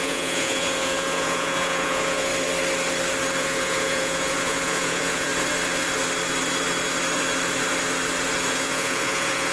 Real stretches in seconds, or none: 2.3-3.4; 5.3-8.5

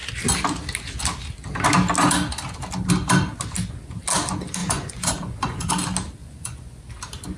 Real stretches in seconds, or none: 0.0-4.6; 5.7-6.2; 6.8-7.4